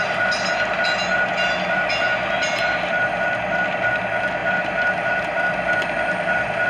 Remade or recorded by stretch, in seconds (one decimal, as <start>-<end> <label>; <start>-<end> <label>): 0.0-6.7 recorded